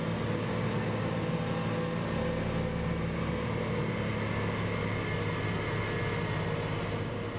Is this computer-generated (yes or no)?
no